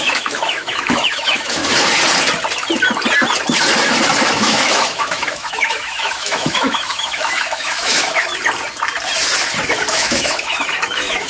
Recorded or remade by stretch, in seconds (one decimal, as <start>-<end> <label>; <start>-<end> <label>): 0.0-1.6 remade; 1.6-4.3 recorded; 4.3-8.3 remade; 8.3-9.9 recorded; 9.9-11.3 remade